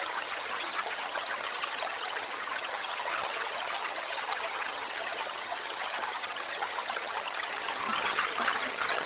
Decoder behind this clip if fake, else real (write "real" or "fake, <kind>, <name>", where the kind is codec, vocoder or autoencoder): fake, vocoder, HiFi-GAN